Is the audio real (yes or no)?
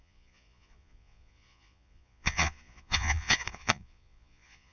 no